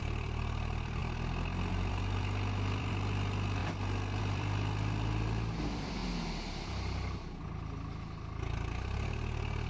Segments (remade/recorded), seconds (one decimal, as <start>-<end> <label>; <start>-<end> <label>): 0.0-3.6 remade; 3.6-4.2 recorded; 4.2-6.0 remade; 6.0-9.7 recorded